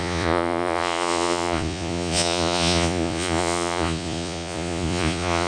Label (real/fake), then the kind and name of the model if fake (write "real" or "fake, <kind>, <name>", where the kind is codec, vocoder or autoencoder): fake, vocoder, Vocos